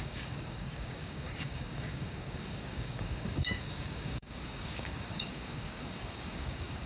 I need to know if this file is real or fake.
fake